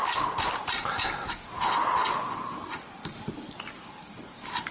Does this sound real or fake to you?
real